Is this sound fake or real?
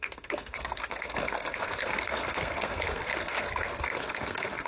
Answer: fake